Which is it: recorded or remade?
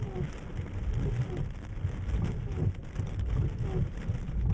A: recorded